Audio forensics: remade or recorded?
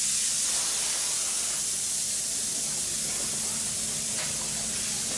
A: recorded